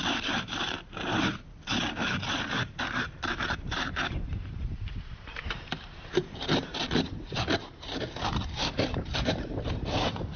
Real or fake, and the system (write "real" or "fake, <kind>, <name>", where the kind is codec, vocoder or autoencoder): fake, vocoder, BigVGAN v2